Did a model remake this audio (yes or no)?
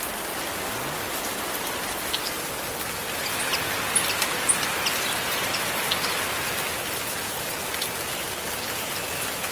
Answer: no